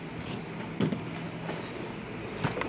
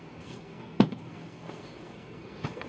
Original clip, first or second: first